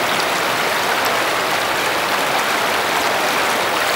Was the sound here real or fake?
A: real